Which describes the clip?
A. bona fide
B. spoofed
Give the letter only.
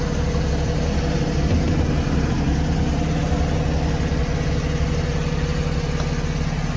A